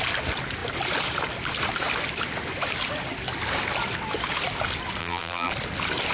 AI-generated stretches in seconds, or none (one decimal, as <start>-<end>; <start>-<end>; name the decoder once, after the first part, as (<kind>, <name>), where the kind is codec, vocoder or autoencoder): 5.0-5.5 (vocoder, BigVGAN v2)